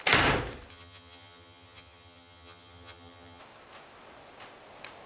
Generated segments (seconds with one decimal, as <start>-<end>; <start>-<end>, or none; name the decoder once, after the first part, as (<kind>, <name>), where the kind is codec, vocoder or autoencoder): 0.7-3.4 (vocoder, HiFi-GAN)